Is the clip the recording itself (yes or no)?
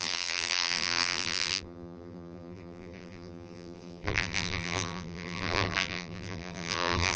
no